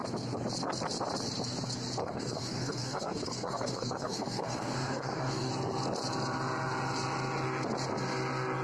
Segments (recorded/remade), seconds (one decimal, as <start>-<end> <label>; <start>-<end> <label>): 0.0-2.0 recorded; 2.0-5.5 remade; 5.5-8.6 recorded